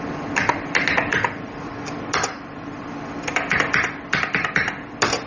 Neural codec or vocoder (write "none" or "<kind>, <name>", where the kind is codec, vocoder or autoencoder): none